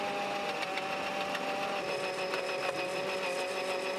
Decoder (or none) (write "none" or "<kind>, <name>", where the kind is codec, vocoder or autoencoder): none